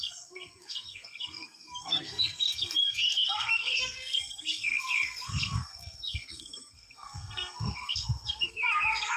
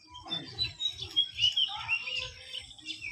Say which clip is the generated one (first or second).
first